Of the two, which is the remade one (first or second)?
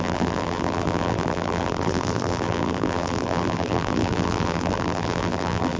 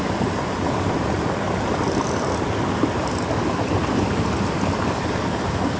first